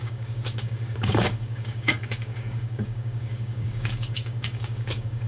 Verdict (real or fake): fake